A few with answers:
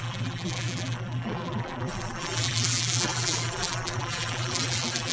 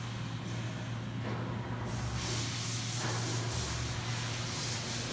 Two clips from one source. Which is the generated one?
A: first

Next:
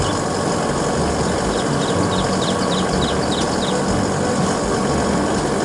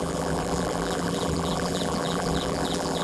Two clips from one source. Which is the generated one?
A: second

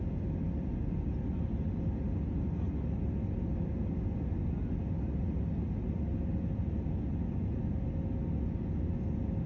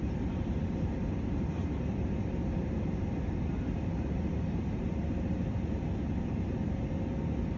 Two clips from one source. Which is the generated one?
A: second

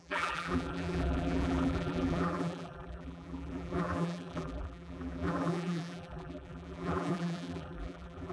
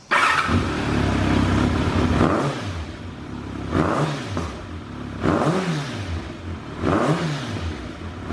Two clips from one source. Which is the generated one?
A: first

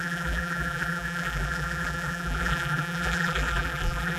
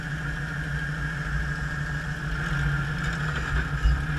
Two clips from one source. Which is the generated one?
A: first